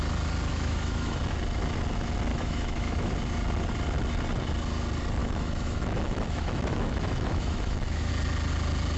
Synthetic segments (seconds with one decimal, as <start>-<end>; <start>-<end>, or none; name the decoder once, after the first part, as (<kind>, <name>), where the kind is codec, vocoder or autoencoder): 0.5-1.2 (autoencoder, DAC-VAE); 2.3-3.1; 5.2-8.1